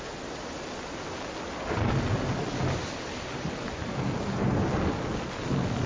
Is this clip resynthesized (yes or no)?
no